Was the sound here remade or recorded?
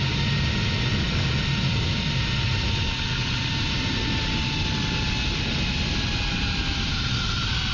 recorded